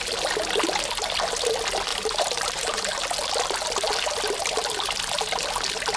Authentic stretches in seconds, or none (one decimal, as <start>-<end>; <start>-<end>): 0.0-1.9; 3.0-6.0